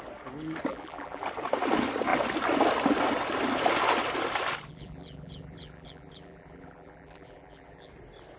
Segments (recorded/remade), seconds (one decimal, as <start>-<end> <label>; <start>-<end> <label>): 0.0-0.7 recorded; 0.7-1.2 remade; 1.2-4.7 recorded; 4.7-7.9 remade; 7.9-8.4 recorded